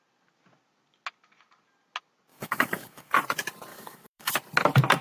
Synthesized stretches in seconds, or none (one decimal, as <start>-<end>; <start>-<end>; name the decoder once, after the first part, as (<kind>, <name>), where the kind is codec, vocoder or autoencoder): 2.3-3.1 (codec, DAC); 3.7-4.3